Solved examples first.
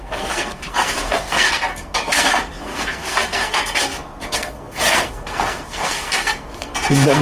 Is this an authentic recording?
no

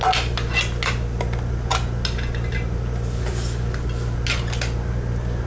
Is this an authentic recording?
yes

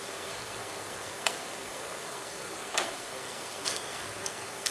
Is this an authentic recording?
no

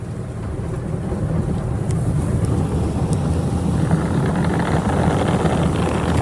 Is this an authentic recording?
yes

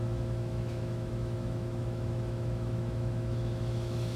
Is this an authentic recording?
no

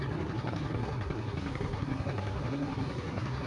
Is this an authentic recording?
no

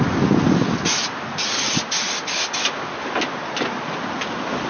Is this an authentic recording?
yes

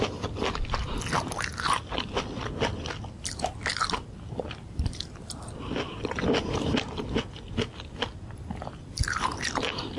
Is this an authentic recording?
yes